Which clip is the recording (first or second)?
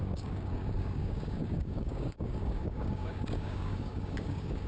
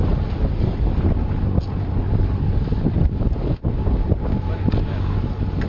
second